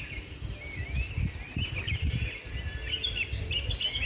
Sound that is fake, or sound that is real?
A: real